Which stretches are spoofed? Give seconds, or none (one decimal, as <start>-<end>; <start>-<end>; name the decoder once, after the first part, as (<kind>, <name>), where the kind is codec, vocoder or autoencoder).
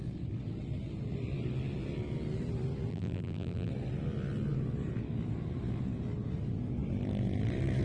2.9-3.7 (vocoder, BigVGAN v2)